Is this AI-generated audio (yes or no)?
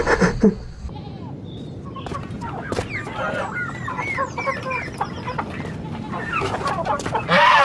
no